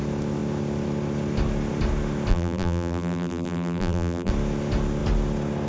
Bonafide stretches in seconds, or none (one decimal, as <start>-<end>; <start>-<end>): 0.0-2.3; 4.3-5.7